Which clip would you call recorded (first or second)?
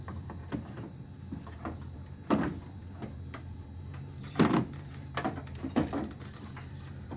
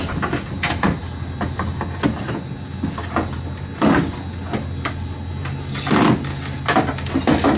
second